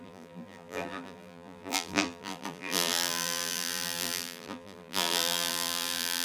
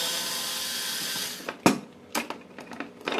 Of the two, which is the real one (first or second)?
second